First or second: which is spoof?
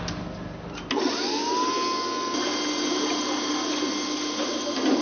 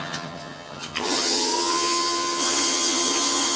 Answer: second